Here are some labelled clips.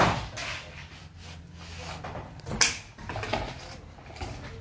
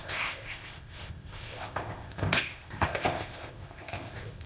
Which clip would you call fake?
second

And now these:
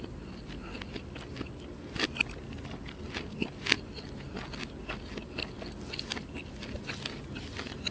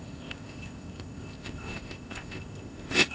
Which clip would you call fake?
second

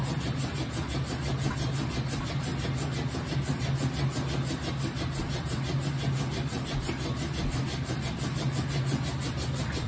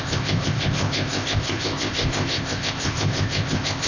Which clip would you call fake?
second